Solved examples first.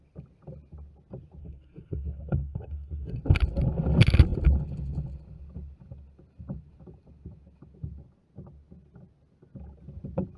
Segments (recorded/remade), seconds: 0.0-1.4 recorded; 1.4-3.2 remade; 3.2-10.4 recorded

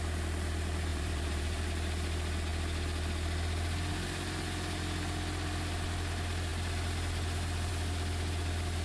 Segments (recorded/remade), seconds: 0.0-0.9 recorded; 0.9-1.6 remade; 1.6-8.8 recorded

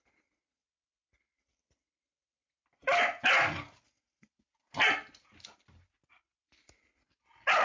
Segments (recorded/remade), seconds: 0.0-2.8 remade; 2.8-5.1 recorded; 5.1-7.6 remade

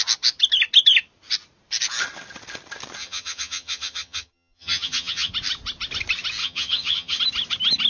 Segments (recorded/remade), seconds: 0.0-3.0 recorded; 3.0-5.3 remade; 5.3-6.4 recorded; 6.4-7.2 remade; 7.2-7.9 recorded

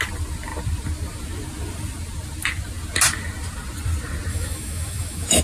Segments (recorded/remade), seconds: 0.0-4.3 recorded; 4.3-5.4 remade

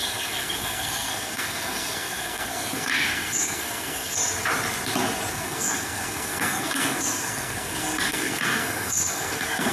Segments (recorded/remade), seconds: 0.0-4.2 remade; 4.2-5.3 recorded; 5.3-9.7 remade

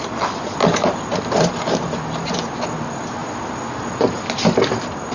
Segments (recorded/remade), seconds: 0.0-5.1 recorded

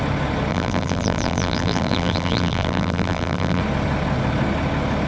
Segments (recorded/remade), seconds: 0.0-0.5 recorded; 0.5-3.6 remade; 3.6-5.1 recorded